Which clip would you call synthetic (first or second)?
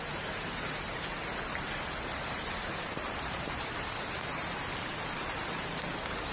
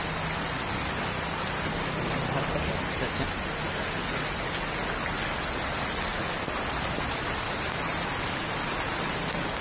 first